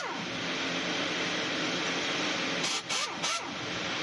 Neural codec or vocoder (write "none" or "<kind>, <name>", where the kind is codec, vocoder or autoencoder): none